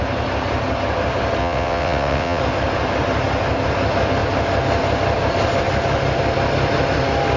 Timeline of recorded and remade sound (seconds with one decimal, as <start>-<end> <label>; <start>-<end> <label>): 0.0-1.4 recorded; 1.4-2.4 remade; 2.4-7.4 recorded